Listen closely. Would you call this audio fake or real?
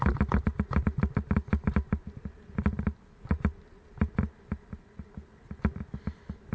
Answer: real